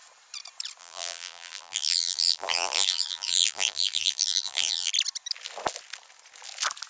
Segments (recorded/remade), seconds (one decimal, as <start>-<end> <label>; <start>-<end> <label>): 0.0-0.8 recorded; 0.8-4.9 remade; 4.9-6.9 recorded